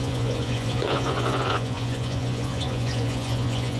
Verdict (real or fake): fake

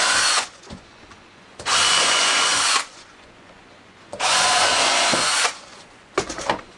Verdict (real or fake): fake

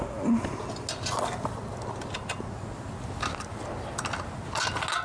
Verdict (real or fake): real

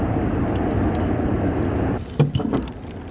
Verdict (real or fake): real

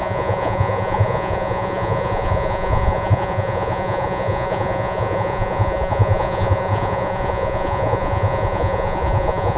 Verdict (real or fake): fake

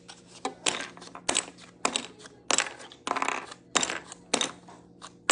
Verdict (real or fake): real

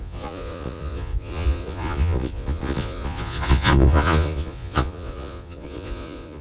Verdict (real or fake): fake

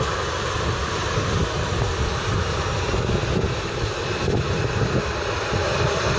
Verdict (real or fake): real